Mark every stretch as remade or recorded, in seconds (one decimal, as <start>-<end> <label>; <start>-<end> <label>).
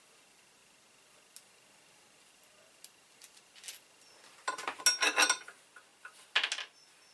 0.0-7.1 recorded